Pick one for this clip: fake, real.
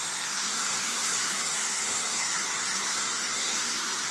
fake